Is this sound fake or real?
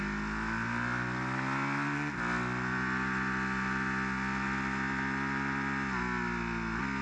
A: real